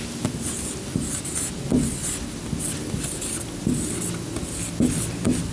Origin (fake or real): real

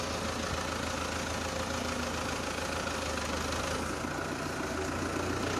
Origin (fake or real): real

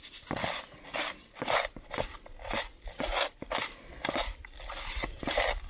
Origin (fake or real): real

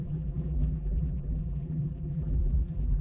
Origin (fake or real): fake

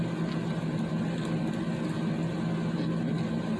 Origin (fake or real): real